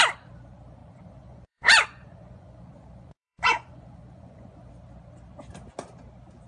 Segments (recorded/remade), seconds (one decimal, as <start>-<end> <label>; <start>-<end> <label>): 0.0-0.8 recorded; 0.8-4.7 remade; 4.7-6.5 recorded